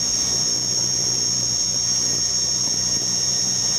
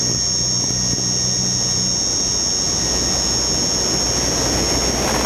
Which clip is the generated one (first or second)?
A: first